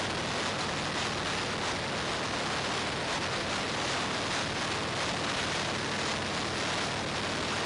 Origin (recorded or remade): recorded